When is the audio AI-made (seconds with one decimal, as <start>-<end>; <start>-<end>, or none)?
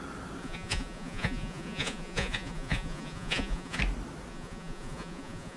0.4-3.8; 4.3-5.6